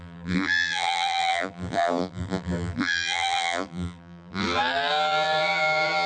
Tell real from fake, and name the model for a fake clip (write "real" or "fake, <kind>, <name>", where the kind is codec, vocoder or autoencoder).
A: fake, vocoder, BigVGAN v2